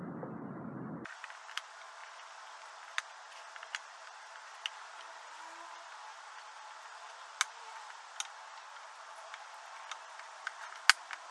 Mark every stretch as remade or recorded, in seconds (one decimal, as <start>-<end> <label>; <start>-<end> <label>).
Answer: 0.0-11.3 recorded